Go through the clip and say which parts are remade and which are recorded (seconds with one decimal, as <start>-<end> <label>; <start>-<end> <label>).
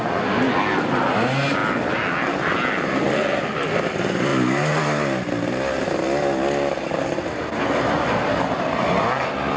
0.0-9.6 recorded